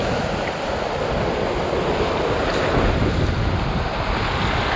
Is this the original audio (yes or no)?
yes